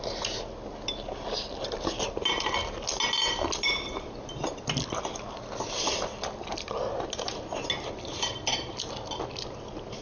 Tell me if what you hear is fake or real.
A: real